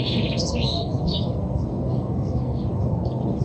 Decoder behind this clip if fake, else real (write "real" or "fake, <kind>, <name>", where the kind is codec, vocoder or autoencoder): fake, codec, SNAC